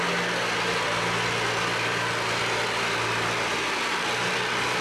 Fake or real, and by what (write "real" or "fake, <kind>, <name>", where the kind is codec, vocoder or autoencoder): real